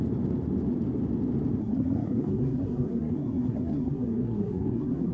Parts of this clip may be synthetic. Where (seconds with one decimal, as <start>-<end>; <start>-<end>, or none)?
1.6-5.1